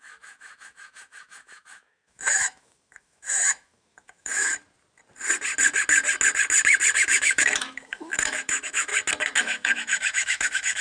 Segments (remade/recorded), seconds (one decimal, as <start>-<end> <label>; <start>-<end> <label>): 0.0-4.5 remade; 4.5-7.0 recorded; 7.0-8.9 remade; 8.9-9.4 recorded; 9.4-10.8 remade